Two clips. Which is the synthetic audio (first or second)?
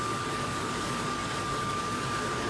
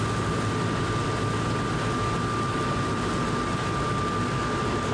first